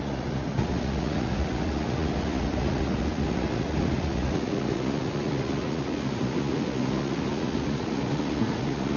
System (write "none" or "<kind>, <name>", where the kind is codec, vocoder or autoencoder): vocoder, Vocos